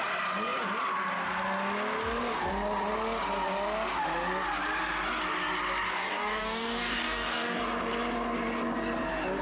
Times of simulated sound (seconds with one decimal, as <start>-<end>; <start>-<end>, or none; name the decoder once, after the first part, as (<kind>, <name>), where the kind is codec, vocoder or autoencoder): 5.9-7.6 (codec, DAC)